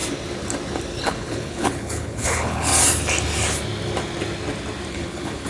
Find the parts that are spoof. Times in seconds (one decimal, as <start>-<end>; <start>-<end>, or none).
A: 1.0-2.7; 4.9-5.5